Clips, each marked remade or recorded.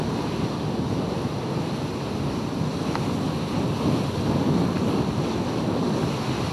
recorded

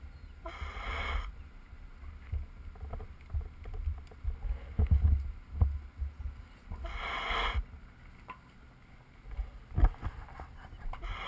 recorded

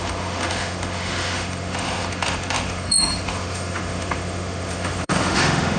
remade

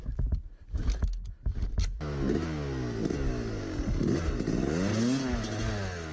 recorded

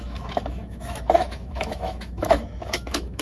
remade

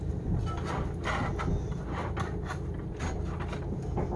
recorded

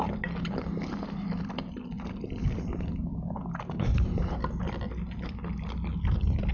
recorded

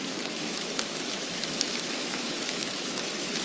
remade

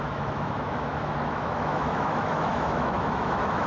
remade